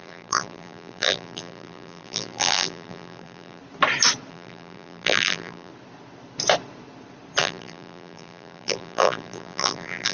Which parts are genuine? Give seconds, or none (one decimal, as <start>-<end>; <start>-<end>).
3.6-4.3; 5.7-7.4

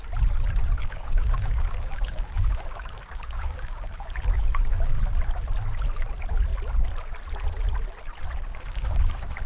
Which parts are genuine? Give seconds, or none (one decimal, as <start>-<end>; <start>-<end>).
0.0-0.8; 5.0-8.5

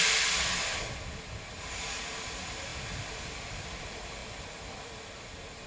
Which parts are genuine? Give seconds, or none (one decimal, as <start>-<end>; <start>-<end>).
0.0-5.7

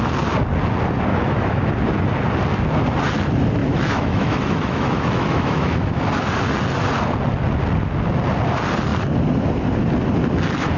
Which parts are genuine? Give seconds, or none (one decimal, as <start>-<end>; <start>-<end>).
0.0-1.1; 1.7-3.6; 6.0-10.8

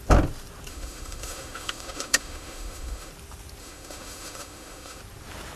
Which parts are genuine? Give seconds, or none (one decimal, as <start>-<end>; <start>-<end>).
0.0-0.7; 3.1-3.6; 5.0-5.6